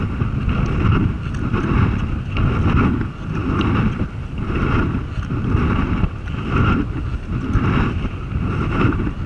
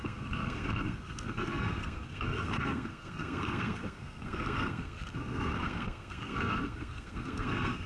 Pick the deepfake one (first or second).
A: second